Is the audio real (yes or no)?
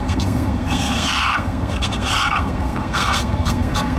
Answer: no